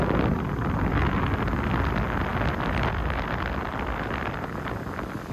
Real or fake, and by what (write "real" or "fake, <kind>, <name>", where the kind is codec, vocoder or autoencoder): real